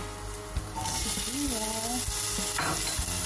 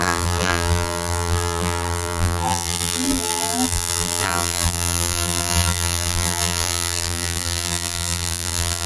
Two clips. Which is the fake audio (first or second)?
second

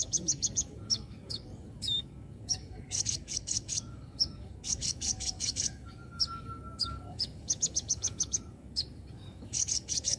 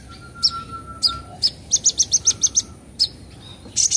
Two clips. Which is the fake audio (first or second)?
first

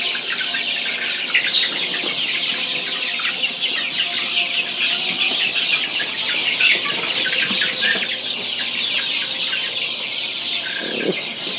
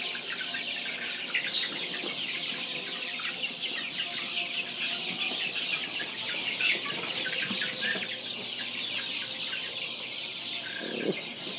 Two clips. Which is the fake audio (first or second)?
second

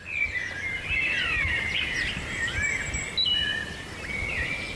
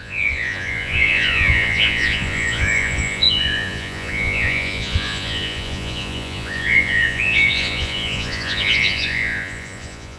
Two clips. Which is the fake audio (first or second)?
second